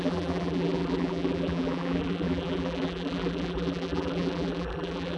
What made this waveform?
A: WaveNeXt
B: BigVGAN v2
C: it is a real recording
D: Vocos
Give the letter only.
B